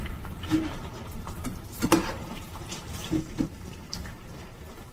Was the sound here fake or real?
fake